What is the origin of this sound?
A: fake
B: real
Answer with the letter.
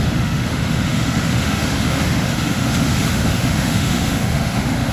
A